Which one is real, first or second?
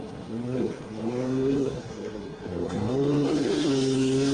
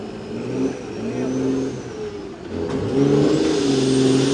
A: second